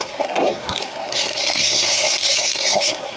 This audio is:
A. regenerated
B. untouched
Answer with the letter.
A